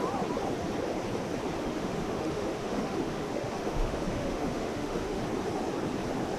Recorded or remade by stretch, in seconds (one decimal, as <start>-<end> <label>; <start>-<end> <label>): 0.0-1.6 recorded; 1.6-5.2 remade; 5.2-6.4 recorded